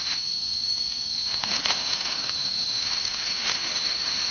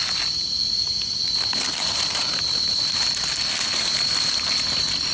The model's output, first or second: first